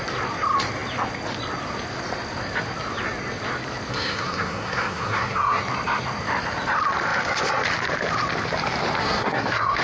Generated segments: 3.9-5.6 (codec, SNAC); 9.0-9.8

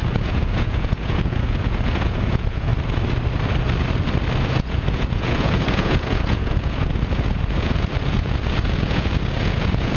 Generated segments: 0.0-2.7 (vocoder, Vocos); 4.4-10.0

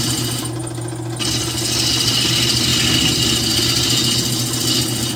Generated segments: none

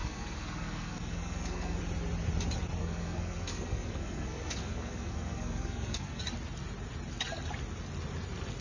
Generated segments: 0.0-1.8 (codec, SNAC); 2.8-6.2